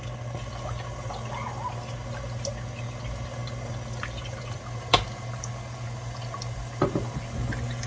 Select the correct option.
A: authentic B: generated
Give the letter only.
A